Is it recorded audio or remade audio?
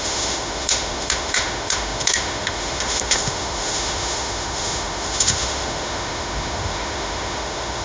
remade